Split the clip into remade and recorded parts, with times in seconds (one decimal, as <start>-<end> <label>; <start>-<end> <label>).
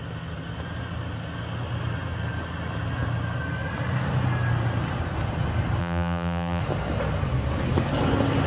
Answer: 0.0-5.8 recorded; 5.8-6.6 remade; 6.6-8.5 recorded